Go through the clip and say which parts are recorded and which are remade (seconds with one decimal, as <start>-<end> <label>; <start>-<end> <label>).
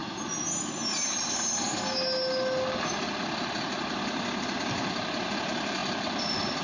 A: 0.0-6.6 recorded